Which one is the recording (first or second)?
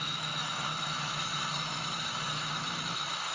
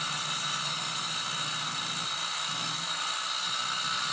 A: second